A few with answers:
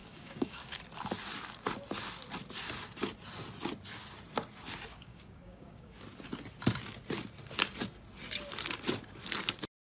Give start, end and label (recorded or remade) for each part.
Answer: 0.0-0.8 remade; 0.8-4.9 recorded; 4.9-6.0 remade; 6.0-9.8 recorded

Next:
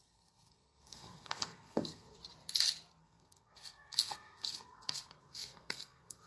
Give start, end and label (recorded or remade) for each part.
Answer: 0.0-2.2 remade; 2.2-3.0 recorded; 3.0-6.3 remade

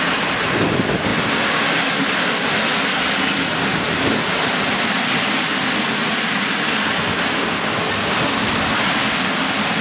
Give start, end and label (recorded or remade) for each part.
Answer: 0.0-1.1 recorded; 1.1-1.6 remade; 1.6-3.7 recorded; 3.7-7.0 remade; 7.0-9.8 recorded